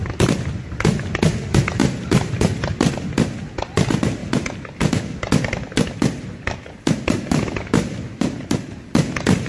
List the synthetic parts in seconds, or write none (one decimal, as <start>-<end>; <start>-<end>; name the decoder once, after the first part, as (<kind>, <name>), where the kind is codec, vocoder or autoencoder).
1.8-2.9 (vocoder, BigVGAN v2)